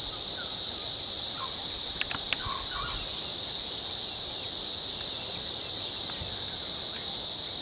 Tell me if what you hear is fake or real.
real